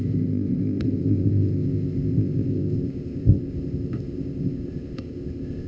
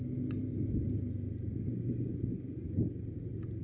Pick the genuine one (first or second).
second